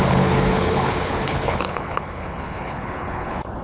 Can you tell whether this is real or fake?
fake